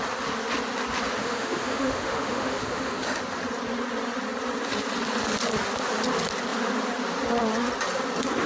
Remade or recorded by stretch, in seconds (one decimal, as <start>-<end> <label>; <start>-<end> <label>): 0.0-1.2 recorded; 1.2-3.2 remade; 3.2-8.5 recorded